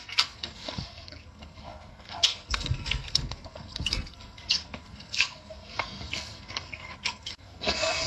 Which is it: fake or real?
fake